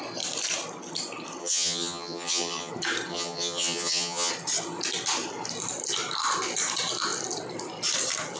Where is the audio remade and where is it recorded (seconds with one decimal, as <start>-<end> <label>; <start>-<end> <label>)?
0.0-1.4 recorded; 1.4-2.7 remade; 2.7-3.1 recorded; 3.1-4.3 remade; 4.3-8.4 recorded